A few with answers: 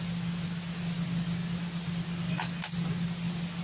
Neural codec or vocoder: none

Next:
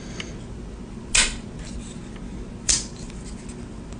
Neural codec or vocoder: none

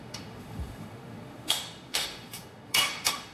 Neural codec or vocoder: autoencoder, DAC-VAE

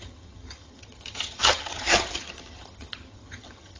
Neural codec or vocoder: vocoder, HiFi-GAN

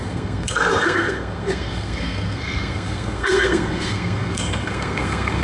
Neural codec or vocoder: codec, SNAC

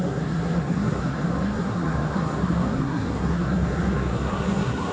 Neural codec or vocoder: codec, SNAC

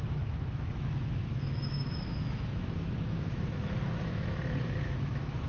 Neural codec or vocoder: autoencoder, DAC-VAE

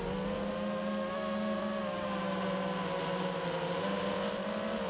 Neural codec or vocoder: none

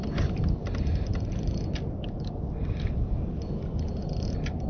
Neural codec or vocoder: none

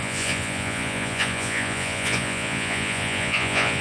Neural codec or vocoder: vocoder, Vocos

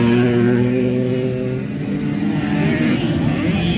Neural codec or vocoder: none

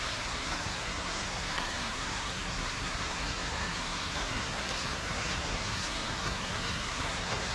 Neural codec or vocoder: codec, SNAC